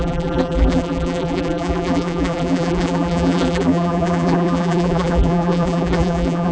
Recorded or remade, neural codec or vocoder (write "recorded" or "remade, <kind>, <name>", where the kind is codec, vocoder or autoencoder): remade, vocoder, BigVGAN v2